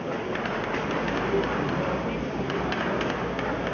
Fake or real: real